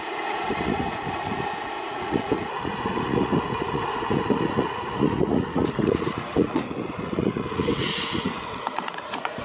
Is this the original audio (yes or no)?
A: no